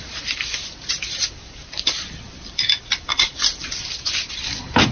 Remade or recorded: remade